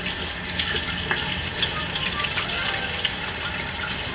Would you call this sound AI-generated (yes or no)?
no